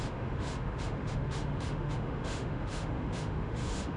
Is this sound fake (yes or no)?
yes